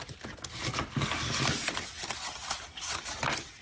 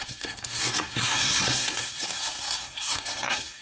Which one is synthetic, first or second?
second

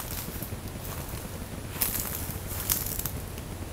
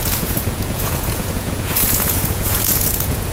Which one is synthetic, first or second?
second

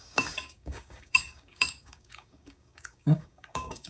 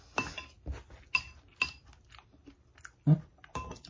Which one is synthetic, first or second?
first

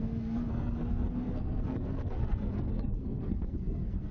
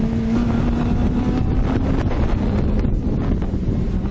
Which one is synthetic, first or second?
first